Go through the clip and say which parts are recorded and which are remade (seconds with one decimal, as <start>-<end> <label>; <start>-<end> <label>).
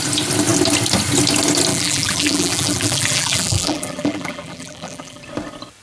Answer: 0.0-1.7 recorded; 1.7-5.2 remade; 5.2-5.8 recorded